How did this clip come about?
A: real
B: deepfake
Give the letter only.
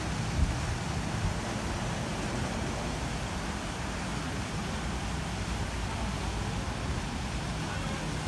A